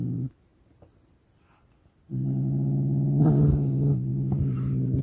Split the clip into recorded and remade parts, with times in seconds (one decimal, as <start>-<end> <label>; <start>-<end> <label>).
0.0-5.0 recorded